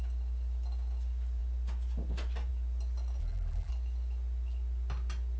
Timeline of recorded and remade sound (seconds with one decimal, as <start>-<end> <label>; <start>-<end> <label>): 0.0-3.2 recorded; 3.2-3.7 remade; 3.7-5.4 recorded